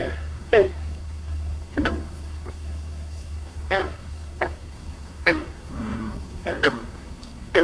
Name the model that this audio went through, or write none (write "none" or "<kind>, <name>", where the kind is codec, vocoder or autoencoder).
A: codec, SNAC